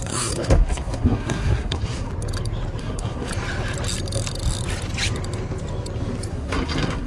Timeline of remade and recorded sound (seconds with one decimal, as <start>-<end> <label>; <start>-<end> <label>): 0.0-2.1 remade; 2.1-2.8 recorded; 2.8-3.3 remade; 3.3-6.3 recorded; 6.3-7.1 remade